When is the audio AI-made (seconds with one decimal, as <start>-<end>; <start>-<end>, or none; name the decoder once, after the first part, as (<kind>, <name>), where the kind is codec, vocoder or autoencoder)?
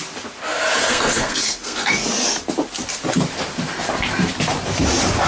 0.8-1.9 (codec, SNAC)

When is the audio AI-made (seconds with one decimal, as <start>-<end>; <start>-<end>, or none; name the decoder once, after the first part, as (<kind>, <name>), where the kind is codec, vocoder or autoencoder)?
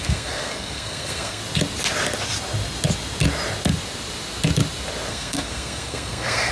0.0-1.4 (codec, SNAC); 5.1-6.5